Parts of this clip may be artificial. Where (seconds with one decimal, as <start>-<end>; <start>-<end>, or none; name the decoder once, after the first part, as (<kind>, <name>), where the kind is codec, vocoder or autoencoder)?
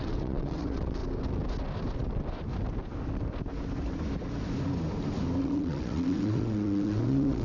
0.0-1.0 (vocoder, WaveNeXt); 5.4-7.4